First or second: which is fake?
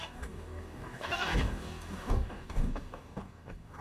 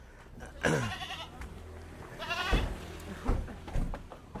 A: first